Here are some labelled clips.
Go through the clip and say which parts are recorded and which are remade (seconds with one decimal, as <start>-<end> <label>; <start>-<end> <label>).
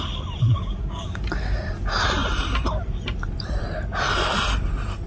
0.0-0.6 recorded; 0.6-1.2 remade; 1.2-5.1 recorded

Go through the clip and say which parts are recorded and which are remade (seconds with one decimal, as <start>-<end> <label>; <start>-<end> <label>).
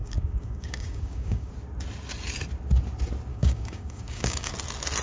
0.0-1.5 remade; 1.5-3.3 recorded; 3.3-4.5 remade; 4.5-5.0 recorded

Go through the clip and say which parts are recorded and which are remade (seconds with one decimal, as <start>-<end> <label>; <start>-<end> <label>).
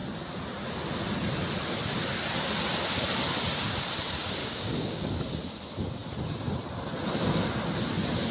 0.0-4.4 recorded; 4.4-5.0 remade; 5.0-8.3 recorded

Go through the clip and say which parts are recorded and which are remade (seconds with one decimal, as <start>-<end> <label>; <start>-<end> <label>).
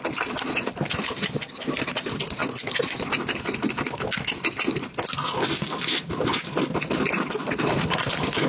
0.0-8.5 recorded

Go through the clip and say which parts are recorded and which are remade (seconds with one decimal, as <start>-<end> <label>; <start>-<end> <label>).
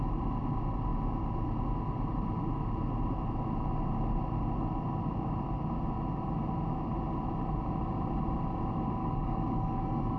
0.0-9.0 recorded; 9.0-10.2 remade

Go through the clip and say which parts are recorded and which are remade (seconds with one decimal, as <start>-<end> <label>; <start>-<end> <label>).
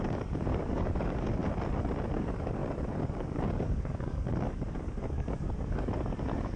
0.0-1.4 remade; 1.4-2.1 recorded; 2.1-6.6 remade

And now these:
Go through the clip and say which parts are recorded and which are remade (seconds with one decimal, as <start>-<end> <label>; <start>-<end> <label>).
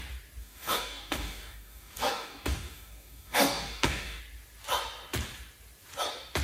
0.0-0.4 recorded; 0.4-4.2 remade; 4.2-6.4 recorded